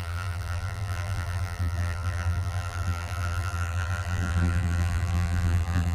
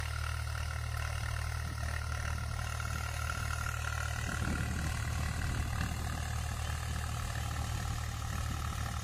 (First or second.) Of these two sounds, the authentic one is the second